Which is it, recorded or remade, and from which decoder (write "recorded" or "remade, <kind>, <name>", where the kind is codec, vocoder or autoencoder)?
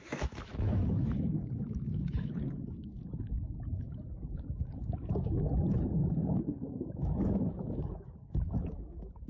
remade, autoencoder, DAC-VAE